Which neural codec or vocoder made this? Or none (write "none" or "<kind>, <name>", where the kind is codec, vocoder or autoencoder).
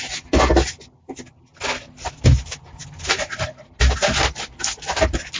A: none